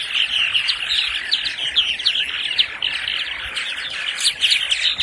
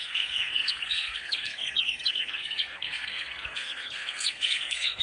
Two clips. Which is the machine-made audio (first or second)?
second